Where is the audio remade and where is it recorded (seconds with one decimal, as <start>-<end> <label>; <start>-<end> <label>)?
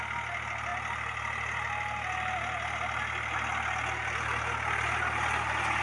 0.0-5.8 recorded